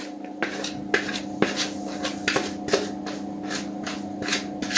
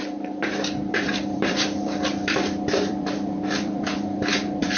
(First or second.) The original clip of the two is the first